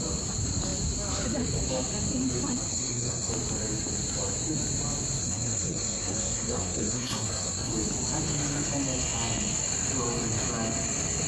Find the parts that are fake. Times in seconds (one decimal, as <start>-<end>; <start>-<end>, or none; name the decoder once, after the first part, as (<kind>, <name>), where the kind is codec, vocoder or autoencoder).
2.7-3.3 (codec, SNAC); 5.2-7.7